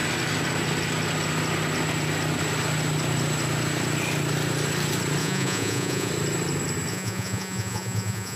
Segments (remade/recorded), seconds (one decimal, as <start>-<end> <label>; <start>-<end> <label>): 0.0-5.2 recorded; 5.2-6.1 remade; 6.1-6.9 recorded; 6.9-8.4 remade